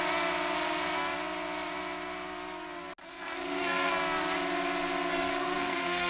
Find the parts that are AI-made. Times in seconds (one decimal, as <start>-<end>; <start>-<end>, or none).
3.0-3.9; 5.1-6.1